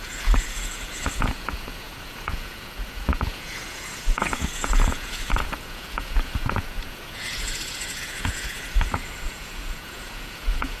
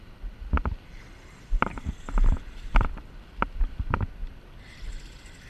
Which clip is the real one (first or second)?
second